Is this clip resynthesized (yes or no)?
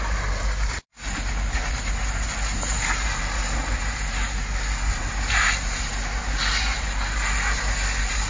yes